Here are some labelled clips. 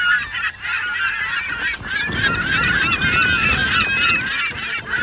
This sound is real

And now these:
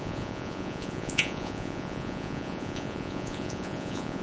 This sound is fake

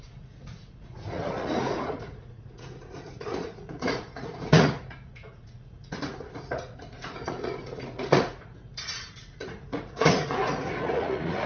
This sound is fake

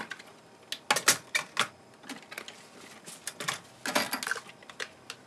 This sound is real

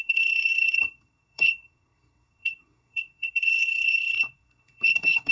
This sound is fake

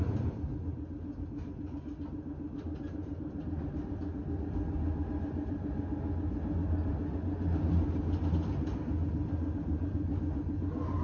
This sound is real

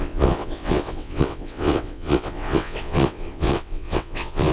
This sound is fake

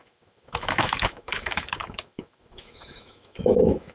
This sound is fake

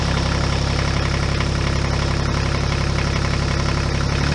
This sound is real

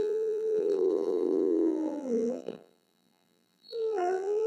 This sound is fake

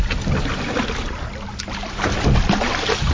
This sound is real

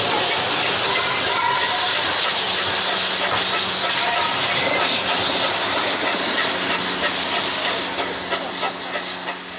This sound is real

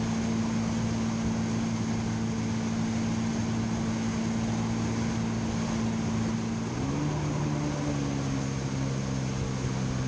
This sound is real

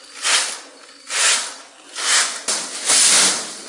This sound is real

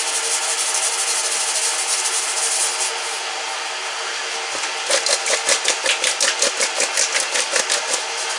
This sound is real